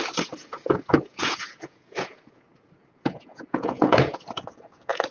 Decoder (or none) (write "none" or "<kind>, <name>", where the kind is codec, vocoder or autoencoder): vocoder, Vocos